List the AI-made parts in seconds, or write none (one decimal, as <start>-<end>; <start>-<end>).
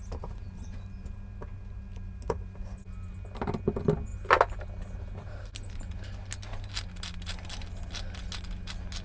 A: none